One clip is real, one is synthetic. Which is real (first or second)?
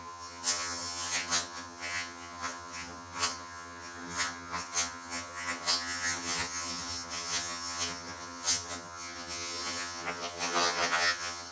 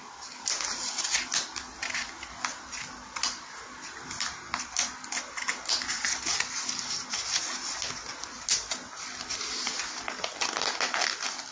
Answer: second